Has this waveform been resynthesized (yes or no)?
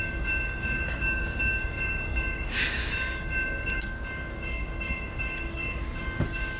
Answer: yes